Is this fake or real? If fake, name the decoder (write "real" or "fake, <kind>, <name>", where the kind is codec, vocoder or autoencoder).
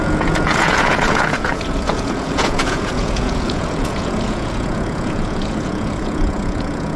fake, vocoder, Vocos